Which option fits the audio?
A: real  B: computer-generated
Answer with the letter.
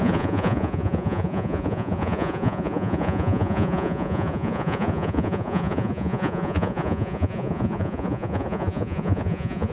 B